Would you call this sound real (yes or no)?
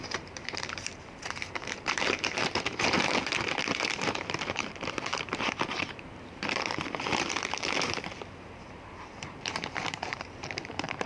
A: no